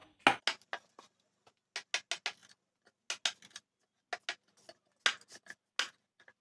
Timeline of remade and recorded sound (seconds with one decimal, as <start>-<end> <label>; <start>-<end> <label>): 0.0-6.4 recorded